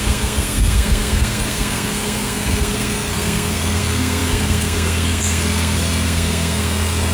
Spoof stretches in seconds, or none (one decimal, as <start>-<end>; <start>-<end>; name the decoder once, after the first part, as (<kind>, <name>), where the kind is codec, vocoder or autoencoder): 0.0-7.1 (codec, SNAC)